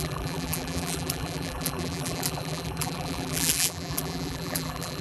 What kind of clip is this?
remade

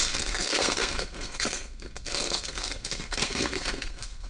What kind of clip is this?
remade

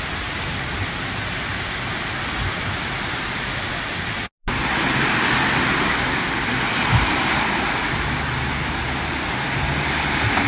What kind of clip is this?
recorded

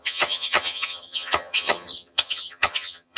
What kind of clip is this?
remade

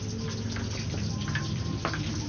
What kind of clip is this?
recorded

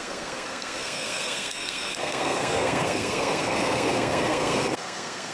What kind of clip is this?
remade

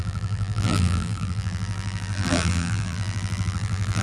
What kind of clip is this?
remade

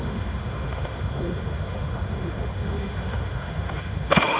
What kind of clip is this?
remade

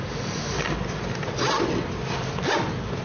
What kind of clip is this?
recorded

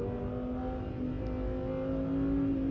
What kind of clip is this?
recorded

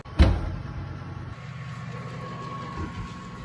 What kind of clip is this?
recorded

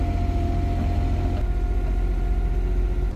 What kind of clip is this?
recorded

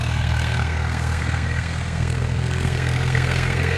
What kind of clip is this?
remade